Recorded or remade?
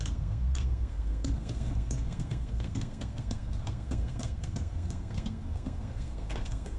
remade